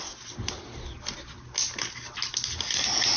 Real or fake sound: real